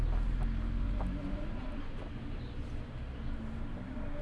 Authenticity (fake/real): real